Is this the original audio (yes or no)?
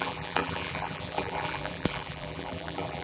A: no